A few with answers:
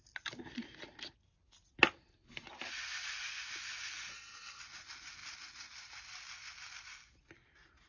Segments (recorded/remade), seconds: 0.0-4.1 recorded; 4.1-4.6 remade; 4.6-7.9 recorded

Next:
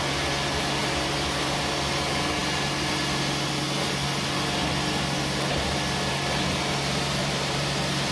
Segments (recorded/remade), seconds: 0.0-0.8 recorded; 0.8-1.6 remade; 1.6-7.2 recorded; 7.2-8.1 remade